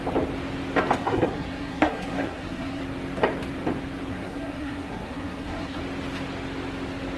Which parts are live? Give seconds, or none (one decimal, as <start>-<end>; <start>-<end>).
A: 0.0-1.0; 2.8-4.1; 5.8-7.2